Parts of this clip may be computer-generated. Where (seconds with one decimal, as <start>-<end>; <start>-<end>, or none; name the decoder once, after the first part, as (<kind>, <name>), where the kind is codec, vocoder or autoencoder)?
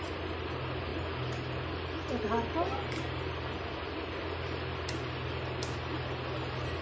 none